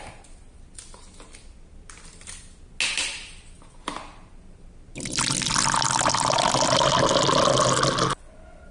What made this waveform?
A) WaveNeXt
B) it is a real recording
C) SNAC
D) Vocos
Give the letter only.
B